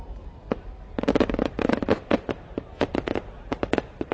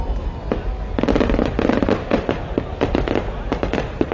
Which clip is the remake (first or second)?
first